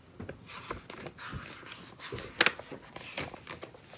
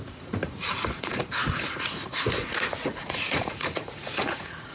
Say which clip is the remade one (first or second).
second